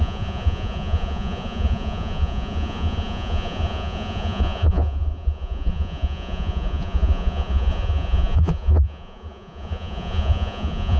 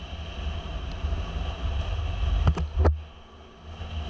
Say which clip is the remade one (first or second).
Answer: first